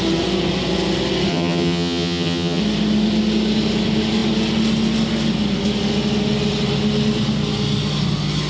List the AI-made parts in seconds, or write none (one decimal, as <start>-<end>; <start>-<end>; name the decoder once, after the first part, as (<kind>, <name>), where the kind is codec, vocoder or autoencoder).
1.3-2.6 (vocoder, HiFi-GAN)